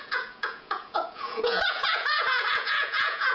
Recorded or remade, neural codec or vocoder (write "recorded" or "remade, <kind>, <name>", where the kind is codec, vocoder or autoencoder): remade, vocoder, Vocos